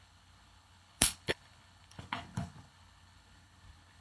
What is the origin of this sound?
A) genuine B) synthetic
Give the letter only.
B